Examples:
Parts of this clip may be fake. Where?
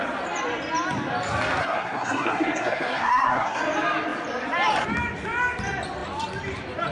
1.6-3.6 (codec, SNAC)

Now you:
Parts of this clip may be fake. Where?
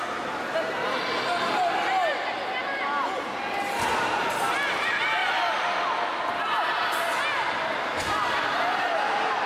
none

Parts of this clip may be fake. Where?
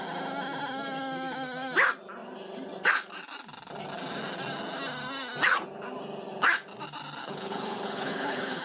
7.2-8.6 (codec, HILCodec)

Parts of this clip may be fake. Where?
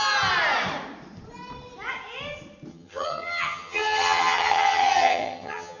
2.7-5.8 (vocoder, HiFi-GAN)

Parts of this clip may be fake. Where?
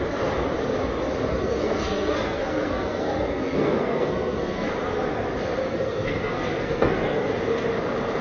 1.3-4.7 (codec, SNAC); 5.7-7.3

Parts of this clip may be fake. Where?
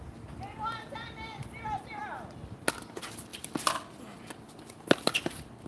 none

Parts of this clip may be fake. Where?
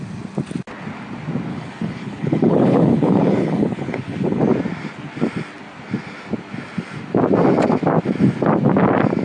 1.5-4.4 (codec, HILCodec)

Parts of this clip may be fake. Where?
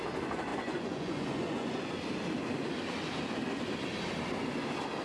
0.5-1.9 (vocoder, Vocos)